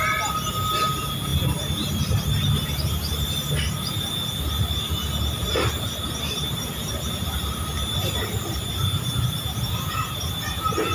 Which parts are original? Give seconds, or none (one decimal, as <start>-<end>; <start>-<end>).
0.0-10.9

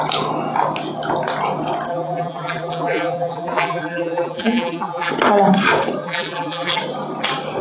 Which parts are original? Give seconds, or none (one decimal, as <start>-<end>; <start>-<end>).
0.0-1.9; 5.1-6.0; 6.8-7.6

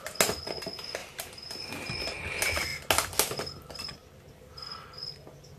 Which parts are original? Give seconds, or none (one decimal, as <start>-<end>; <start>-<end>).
0.0-5.6

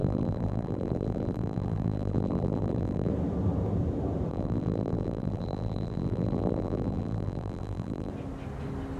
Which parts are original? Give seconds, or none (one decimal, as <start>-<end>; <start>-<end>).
3.1-4.3; 8.1-9.0

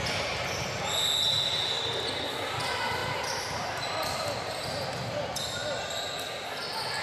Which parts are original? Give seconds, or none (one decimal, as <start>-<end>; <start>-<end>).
0.0-3.0; 4.8-7.0

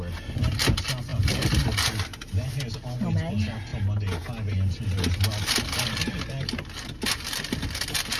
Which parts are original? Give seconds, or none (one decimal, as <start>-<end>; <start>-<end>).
0.0-8.2

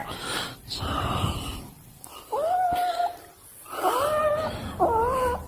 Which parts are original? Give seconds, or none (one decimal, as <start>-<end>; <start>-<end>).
0.5-4.2; 4.8-5.5

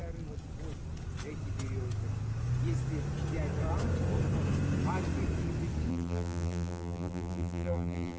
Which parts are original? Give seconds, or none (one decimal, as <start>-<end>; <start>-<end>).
0.0-5.9